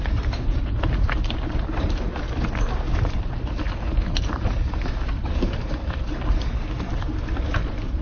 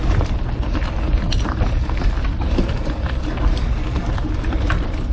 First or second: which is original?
second